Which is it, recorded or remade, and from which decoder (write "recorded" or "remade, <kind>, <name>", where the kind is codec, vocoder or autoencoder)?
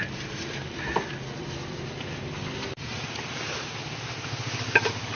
recorded